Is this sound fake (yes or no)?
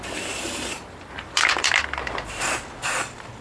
yes